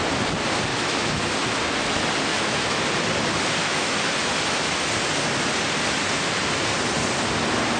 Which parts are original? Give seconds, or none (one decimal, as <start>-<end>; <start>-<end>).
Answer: 0.0-0.7; 1.2-2.3; 2.8-3.6; 4.1-7.8